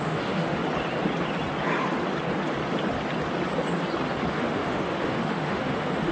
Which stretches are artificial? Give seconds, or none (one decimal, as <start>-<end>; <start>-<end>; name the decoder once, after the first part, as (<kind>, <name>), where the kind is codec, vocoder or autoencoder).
0.0-0.6 (autoencoder, DAC-VAE); 4.3-6.1